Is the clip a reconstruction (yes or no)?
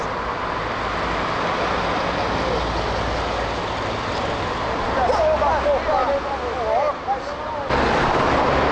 no